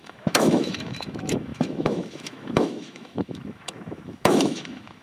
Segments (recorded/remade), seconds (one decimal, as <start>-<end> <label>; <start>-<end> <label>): 0.0-5.0 remade